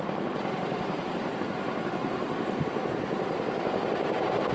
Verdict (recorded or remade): recorded